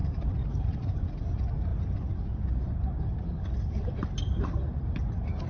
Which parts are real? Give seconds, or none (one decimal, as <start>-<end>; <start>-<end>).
1.2-5.5